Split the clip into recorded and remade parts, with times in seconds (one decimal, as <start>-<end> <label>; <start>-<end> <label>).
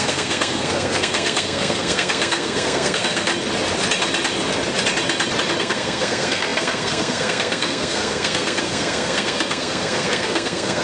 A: 0.0-3.3 remade; 3.3-5.6 recorded; 5.6-10.8 remade